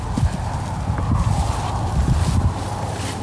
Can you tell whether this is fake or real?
real